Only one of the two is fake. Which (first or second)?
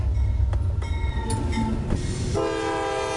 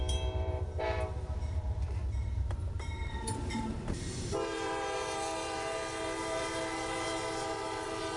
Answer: second